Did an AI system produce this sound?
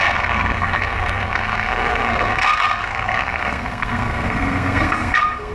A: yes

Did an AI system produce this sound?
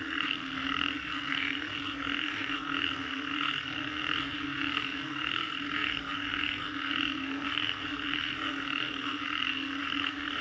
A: yes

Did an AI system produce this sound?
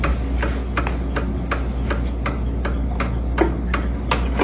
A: no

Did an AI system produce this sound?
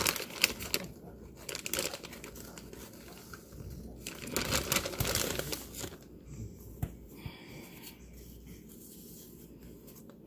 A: no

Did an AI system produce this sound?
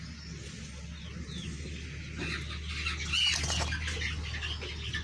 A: no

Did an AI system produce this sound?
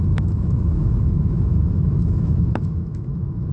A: yes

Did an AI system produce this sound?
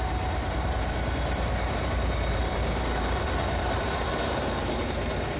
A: yes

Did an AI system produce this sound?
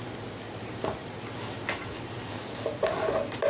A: no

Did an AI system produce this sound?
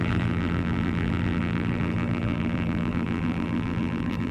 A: yes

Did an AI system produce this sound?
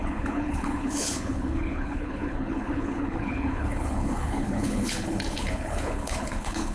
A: yes